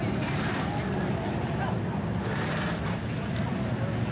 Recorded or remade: recorded